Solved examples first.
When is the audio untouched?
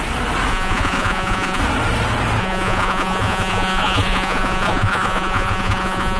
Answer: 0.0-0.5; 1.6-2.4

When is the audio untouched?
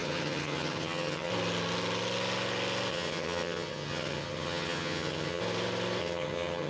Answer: 1.3-2.9; 5.4-6.0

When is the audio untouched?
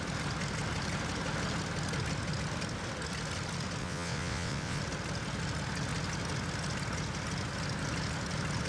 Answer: 0.0-3.8; 4.8-8.7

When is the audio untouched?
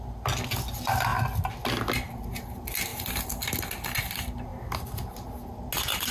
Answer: 0.0-6.1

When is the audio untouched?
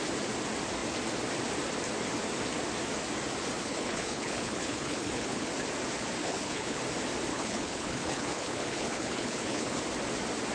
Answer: 0.0-3.6; 5.5-6.2; 6.8-7.3; 9.8-10.5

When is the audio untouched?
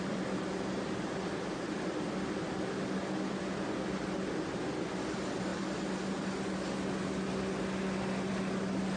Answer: 0.0-9.0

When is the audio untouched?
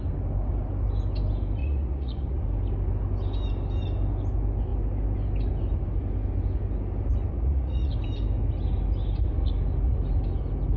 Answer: 0.0-1.6; 2.4-7.3; 7.9-10.8